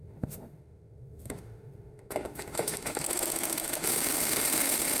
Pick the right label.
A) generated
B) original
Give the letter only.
A